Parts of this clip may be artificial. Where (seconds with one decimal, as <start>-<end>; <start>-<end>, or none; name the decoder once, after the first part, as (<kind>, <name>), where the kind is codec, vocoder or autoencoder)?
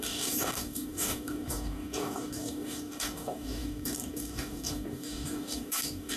0.0-6.2 (codec, DAC)